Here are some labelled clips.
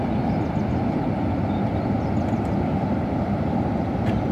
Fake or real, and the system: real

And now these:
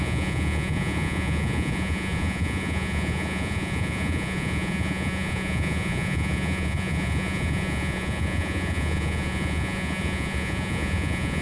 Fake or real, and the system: fake, vocoder, Vocos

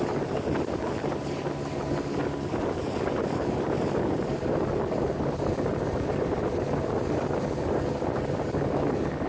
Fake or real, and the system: real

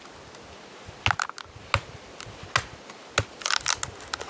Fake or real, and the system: real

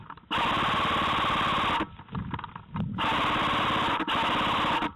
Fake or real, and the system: real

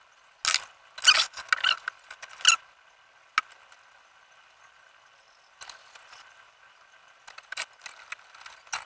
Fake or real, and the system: real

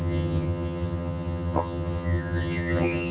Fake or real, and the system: fake, vocoder, HiFi-GAN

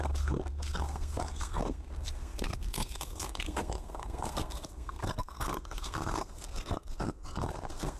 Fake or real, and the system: fake, codec, SNAC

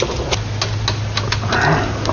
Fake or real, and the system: real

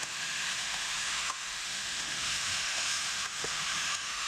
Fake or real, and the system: fake, autoencoder, DAC-VAE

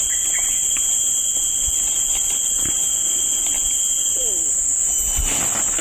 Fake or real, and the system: real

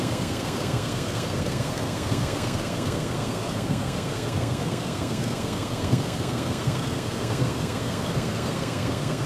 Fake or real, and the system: fake, codec, SNAC